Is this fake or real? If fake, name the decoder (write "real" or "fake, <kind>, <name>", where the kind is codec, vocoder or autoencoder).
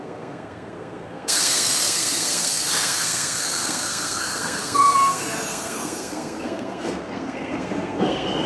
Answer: fake, codec, SNAC